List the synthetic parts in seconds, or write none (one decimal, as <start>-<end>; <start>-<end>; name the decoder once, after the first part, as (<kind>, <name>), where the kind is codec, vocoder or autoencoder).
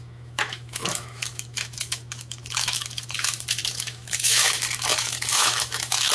0.0-6.1 (autoencoder, DAC-VAE)